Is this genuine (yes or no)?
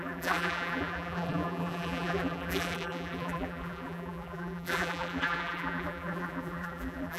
no